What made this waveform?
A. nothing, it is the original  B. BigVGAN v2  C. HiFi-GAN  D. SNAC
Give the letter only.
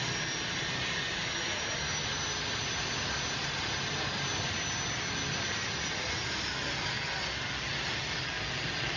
A